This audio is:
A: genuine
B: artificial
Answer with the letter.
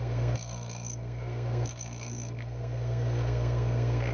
B